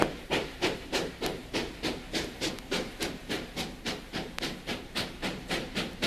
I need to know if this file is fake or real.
fake